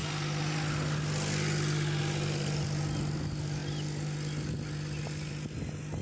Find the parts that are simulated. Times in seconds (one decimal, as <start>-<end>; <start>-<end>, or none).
none